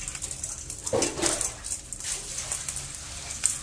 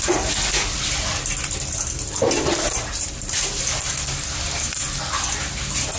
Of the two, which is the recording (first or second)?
second